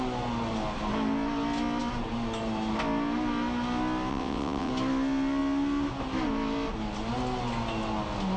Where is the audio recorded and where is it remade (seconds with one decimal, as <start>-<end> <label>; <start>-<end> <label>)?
0.0-4.1 recorded; 4.1-4.7 remade; 4.7-8.4 recorded